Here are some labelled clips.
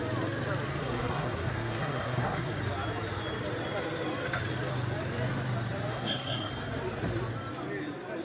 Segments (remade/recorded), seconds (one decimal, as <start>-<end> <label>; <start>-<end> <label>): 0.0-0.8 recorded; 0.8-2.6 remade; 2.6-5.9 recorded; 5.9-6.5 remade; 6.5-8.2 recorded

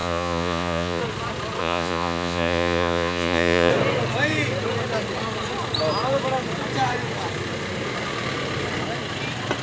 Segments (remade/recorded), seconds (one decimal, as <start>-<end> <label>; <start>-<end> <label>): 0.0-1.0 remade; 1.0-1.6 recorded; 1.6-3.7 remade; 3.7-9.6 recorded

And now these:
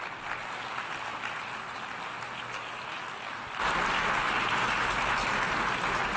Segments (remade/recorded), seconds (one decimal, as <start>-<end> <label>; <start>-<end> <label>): 0.0-6.2 recorded

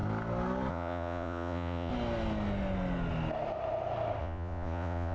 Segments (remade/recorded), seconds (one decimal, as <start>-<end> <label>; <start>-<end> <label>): 0.0-0.7 recorded; 0.7-1.9 remade; 1.9-4.2 recorded; 4.2-5.1 remade

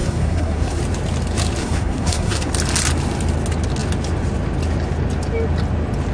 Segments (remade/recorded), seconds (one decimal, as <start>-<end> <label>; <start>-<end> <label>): 0.0-0.8 remade; 0.8-1.6 recorded; 1.6-2.5 remade; 2.5-6.1 recorded

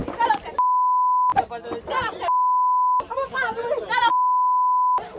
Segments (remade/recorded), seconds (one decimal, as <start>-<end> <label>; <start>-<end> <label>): 0.0-5.2 recorded

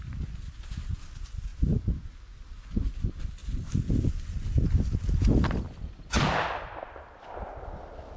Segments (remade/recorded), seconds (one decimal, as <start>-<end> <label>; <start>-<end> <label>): 0.0-8.2 recorded